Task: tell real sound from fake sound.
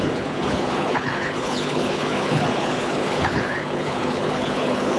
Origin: fake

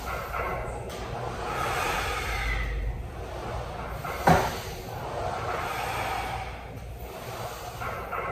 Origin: real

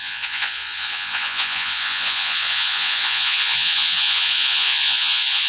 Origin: fake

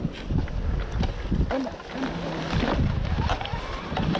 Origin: real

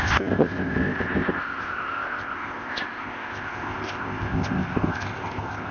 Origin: fake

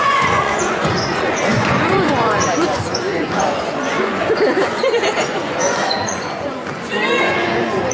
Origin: fake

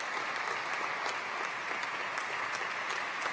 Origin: real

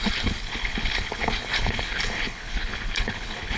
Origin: fake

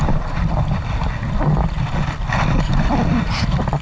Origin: real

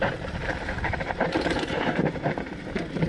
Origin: fake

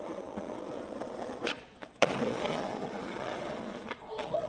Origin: fake